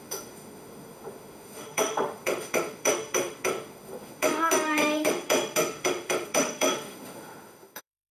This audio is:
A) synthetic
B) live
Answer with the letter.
A